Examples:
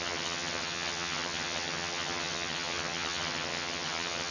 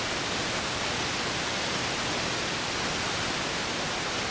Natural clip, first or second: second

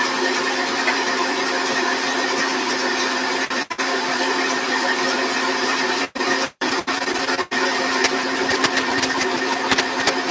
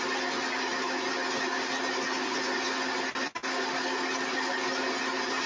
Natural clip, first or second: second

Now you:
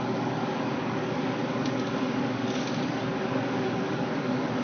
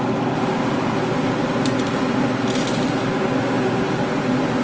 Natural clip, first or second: second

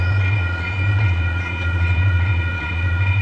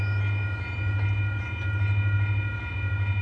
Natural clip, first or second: second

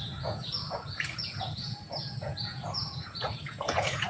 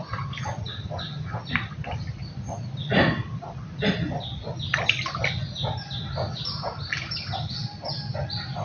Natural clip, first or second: second